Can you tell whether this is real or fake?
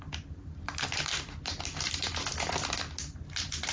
real